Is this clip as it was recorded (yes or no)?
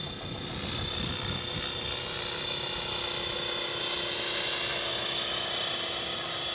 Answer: yes